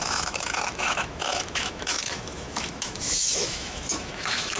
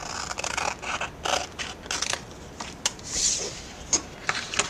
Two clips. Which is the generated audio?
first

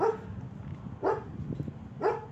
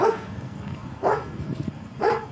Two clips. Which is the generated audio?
second